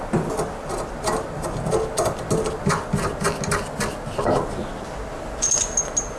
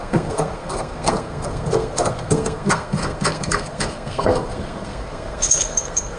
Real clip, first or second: first